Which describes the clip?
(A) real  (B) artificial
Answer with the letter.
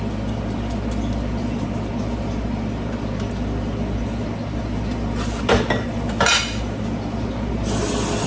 A